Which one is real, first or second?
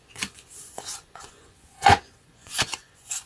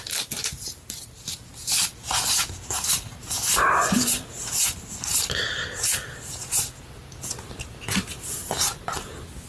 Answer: second